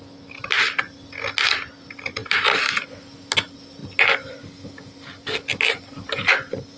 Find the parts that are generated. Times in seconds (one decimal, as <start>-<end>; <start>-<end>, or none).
2.2-2.7